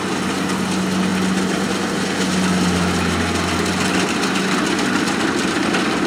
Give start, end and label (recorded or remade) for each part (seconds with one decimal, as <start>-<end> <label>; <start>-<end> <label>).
0.0-6.1 recorded